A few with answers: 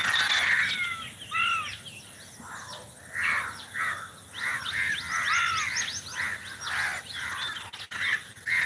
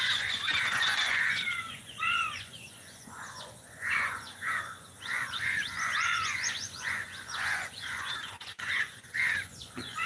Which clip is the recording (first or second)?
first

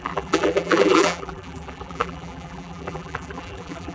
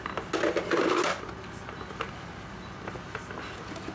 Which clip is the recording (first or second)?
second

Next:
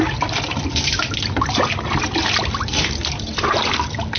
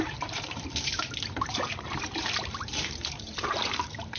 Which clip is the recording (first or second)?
first